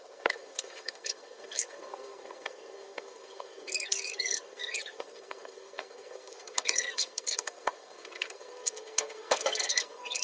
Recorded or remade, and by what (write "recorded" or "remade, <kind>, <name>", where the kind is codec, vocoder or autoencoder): remade, codec, SNAC